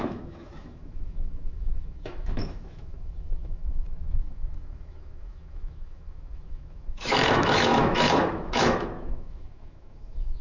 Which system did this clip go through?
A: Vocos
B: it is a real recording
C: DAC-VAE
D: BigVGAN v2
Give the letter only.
C